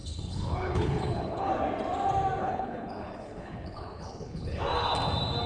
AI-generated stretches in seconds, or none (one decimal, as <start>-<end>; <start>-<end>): 0.0-1.5; 2.4-4.6